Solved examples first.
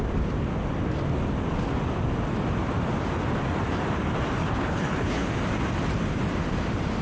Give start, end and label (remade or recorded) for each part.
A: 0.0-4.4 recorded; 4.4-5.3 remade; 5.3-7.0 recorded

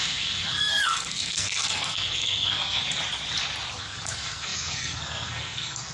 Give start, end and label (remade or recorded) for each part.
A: 0.0-2.8 remade; 2.8-3.8 recorded; 3.8-5.9 remade

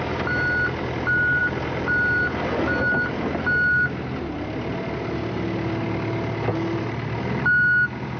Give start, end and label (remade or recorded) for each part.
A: 0.0-8.2 recorded

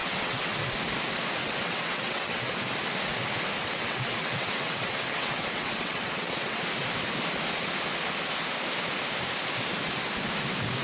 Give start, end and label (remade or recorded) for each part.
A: 0.0-0.7 remade; 0.7-1.4 recorded; 1.4-2.5 remade; 2.5-3.6 recorded; 3.6-6.6 remade; 6.6-10.8 recorded

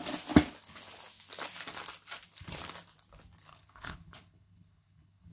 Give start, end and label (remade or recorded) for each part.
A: 0.0-3.5 recorded; 3.5-5.3 remade

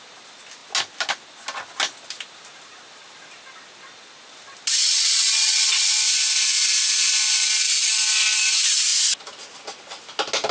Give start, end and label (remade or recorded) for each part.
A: 0.0-4.8 recorded; 4.8-5.9 remade; 5.9-10.5 recorded

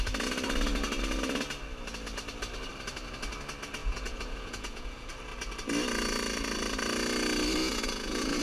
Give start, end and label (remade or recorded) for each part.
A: 0.0-3.8 recorded; 3.8-5.1 remade; 5.1-7.6 recorded; 7.6-8.4 remade